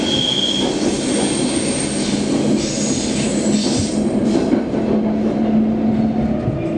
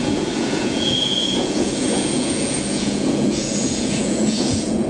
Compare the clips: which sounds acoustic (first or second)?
first